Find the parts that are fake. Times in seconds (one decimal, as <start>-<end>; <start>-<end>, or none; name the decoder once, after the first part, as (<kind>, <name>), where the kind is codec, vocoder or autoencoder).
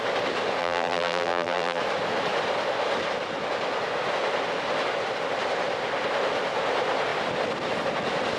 0.6-1.8 (vocoder, BigVGAN v2)